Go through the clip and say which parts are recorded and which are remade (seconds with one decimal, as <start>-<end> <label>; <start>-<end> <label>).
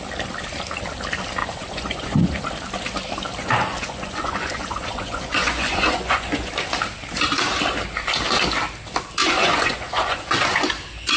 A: 0.0-1.4 recorded; 1.4-2.4 remade; 2.4-3.4 recorded; 3.4-6.5 remade; 6.5-9.2 recorded; 9.2-10.7 remade; 10.7-11.2 recorded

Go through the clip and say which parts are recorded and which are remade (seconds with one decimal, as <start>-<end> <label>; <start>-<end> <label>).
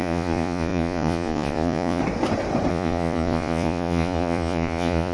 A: 0.0-2.0 remade; 2.0-2.7 recorded; 2.7-5.1 remade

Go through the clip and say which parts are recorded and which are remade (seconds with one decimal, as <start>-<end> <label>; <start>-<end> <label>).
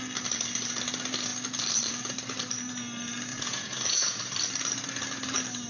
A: 0.0-3.3 recorded; 3.3-4.2 remade; 4.2-5.7 recorded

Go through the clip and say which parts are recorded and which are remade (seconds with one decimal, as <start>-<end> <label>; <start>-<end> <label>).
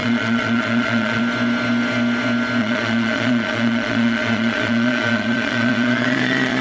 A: 0.0-1.2 remade; 1.2-2.6 recorded; 2.6-6.6 remade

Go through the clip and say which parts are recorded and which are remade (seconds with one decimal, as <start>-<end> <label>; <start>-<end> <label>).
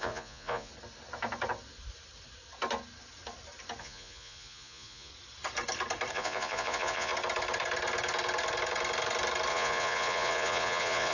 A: 0.0-0.7 remade; 0.7-3.8 recorded; 3.8-5.1 remade; 5.1-6.1 recorded; 6.1-7.1 remade; 7.1-9.5 recorded; 9.5-11.1 remade